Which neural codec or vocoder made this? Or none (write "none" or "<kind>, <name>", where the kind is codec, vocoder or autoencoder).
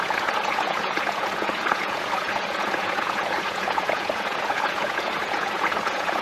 vocoder, Vocos